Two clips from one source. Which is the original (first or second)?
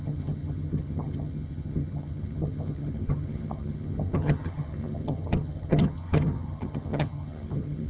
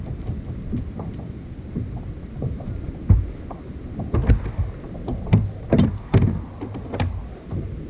second